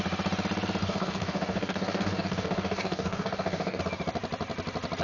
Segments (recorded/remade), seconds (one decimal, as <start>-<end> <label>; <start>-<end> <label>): 0.0-0.8 recorded; 0.8-3.8 remade; 3.8-5.0 recorded